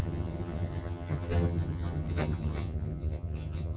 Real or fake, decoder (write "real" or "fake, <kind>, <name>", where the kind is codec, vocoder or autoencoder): fake, vocoder, HiFi-GAN